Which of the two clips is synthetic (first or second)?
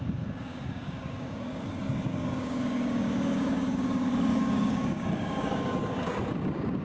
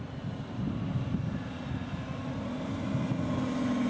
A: first